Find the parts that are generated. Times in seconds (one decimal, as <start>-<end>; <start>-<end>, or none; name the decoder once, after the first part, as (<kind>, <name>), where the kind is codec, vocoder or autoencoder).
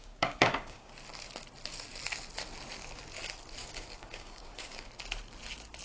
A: 0.0-0.9 (codec, DAC); 3.6-4.9